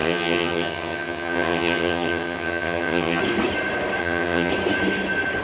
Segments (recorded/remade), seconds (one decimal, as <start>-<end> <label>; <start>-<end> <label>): 0.0-3.2 remade; 3.2-4.0 recorded; 4.0-4.5 remade; 4.5-5.4 recorded